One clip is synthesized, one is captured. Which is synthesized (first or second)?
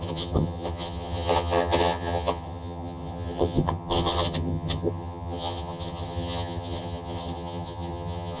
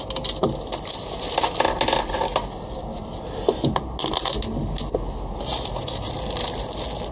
first